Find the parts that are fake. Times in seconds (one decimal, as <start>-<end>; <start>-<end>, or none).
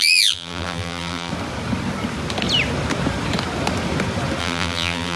0.0-1.3; 4.4-5.2